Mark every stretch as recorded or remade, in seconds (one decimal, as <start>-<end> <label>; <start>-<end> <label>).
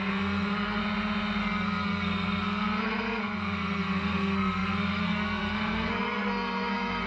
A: 0.0-0.8 remade; 0.8-1.4 recorded; 1.4-7.1 remade